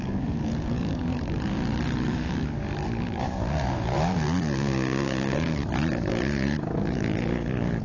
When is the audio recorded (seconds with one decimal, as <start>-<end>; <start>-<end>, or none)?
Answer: 5.6-6.1